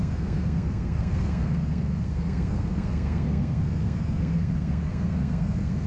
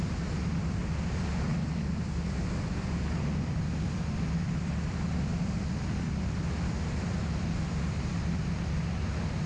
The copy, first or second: first